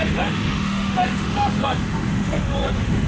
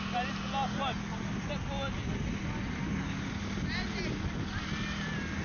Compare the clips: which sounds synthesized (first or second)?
first